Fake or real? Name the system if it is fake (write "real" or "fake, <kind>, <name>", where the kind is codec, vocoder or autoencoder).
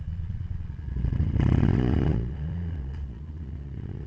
fake, vocoder, Vocos